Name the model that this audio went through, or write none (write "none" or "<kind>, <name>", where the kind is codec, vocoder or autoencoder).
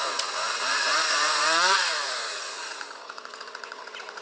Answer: vocoder, Vocos